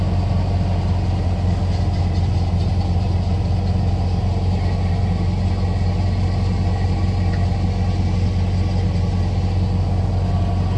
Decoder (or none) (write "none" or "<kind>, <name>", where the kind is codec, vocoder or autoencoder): none